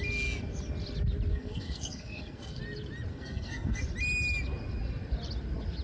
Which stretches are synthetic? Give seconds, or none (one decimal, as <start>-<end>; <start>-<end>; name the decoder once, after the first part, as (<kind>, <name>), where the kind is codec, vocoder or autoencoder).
1.3-2.6 (codec, SNAC); 3.1-3.8